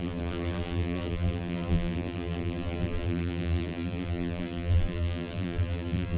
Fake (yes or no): yes